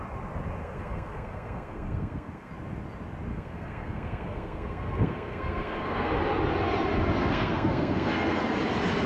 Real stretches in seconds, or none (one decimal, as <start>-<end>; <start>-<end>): 0.0-0.6; 2.5-3.3; 6.1-7.2; 8.4-9.1